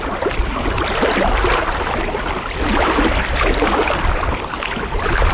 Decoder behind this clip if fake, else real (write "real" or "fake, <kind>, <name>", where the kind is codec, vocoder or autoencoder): real